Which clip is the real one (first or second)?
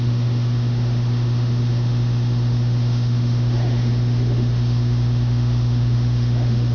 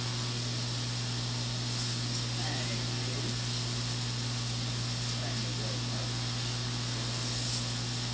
second